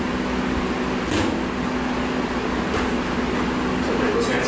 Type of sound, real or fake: real